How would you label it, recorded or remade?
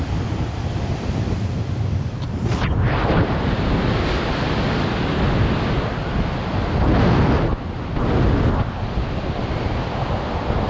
recorded